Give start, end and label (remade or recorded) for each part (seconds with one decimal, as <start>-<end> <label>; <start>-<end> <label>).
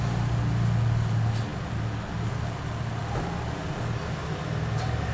0.0-5.1 recorded